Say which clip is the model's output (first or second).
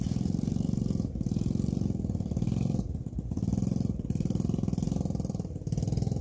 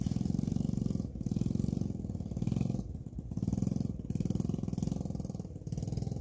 first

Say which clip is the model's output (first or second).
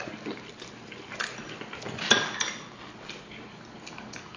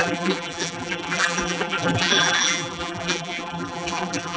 second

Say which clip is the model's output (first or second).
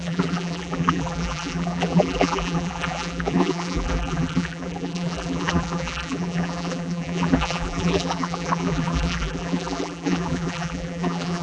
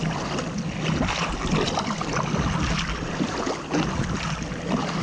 first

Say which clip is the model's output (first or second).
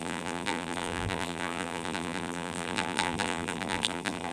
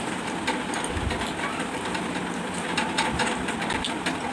first